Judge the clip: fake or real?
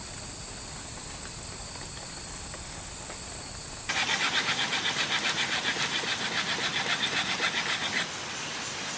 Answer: real